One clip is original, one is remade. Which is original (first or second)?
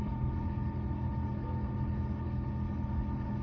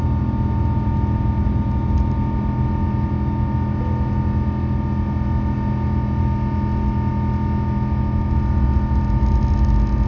second